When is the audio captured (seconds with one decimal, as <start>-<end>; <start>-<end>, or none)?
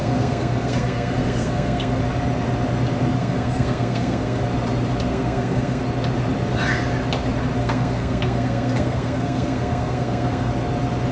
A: 2.0-3.2; 4.4-5.1; 5.8-7.6; 10.5-11.1